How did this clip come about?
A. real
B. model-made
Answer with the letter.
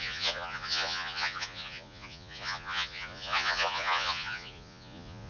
B